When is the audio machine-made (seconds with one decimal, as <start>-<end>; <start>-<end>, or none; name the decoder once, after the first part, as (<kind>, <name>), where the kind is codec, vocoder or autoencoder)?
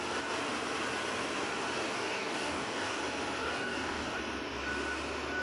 1.9-3.0 (codec, DAC); 3.4-4.2